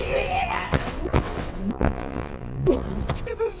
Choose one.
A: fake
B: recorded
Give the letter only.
A